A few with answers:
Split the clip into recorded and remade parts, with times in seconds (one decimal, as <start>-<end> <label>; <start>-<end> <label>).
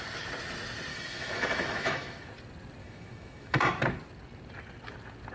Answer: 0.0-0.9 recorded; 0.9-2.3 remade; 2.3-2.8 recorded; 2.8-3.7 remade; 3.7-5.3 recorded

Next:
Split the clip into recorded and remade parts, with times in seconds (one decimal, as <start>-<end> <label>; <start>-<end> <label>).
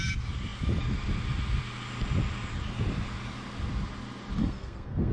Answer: 0.0-4.4 recorded; 4.4-5.1 remade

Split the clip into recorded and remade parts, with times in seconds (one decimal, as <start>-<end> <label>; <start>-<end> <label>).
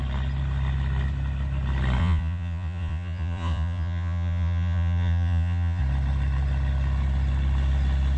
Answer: 0.0-2.0 recorded; 2.0-5.8 remade; 5.8-8.2 recorded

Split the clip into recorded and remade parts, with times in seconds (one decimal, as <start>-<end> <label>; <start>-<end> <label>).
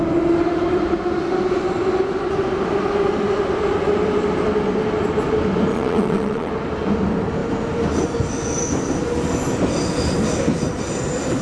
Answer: 0.0-5.7 recorded; 5.7-6.5 remade; 6.5-11.4 recorded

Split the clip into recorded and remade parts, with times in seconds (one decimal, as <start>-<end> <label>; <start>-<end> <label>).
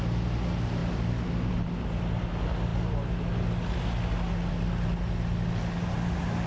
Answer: 0.0-6.5 recorded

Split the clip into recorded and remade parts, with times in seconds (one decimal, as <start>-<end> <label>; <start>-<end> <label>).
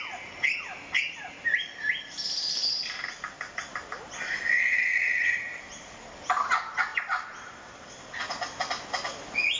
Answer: 0.0-4.6 recorded; 4.6-5.6 remade; 5.6-9.6 recorded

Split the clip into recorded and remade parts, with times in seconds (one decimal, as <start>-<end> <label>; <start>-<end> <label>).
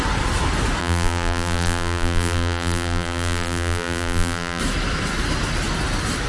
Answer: 0.0-0.8 recorded; 0.8-4.6 remade; 4.6-6.3 recorded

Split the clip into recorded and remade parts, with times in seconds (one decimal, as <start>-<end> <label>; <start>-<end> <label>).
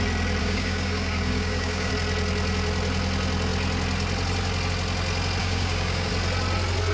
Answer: 0.0-0.4 recorded; 0.4-1.9 remade; 1.9-5.4 recorded; 5.4-6.1 remade; 6.1-6.9 recorded